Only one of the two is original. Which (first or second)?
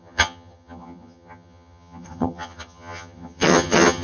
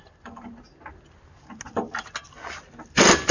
second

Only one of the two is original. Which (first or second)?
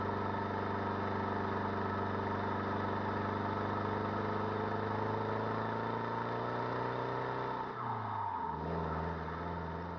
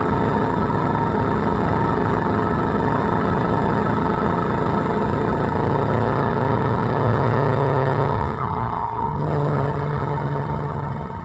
first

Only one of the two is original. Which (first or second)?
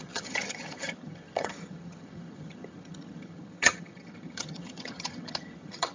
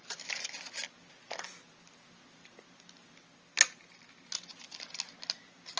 second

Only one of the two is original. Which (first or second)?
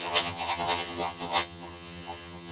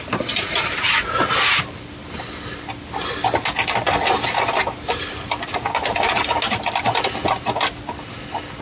second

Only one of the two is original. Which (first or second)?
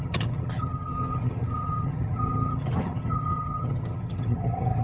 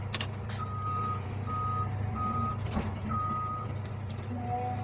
second